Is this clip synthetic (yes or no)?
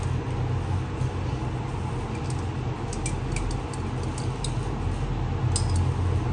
no